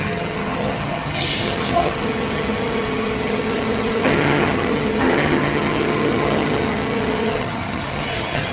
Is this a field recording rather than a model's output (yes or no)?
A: no